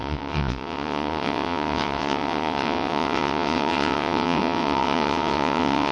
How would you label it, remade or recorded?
remade